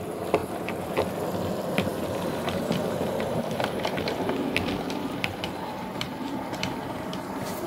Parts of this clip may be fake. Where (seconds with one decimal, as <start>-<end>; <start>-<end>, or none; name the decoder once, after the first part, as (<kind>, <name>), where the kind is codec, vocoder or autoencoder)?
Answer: 0.4-0.9 (vocoder, BigVGAN v2); 1.9-4.1; 5.9-7.7